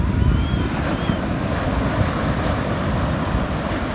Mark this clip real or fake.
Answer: fake